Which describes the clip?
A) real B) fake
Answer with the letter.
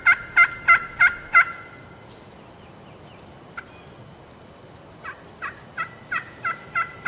A